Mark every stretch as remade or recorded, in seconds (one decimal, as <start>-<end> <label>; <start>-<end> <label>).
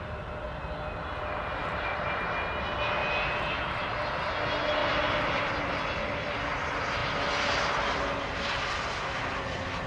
0.0-1.6 recorded; 1.6-2.2 remade; 2.2-4.8 recorded; 4.8-5.5 remade; 5.5-9.9 recorded